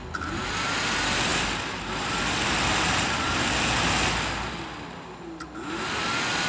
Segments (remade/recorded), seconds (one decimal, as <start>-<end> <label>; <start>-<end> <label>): 0.0-6.5 recorded